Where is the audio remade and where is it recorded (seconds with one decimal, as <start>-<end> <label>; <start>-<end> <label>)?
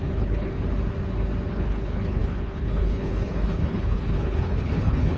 0.0-0.5 remade; 0.5-1.5 recorded; 1.5-5.2 remade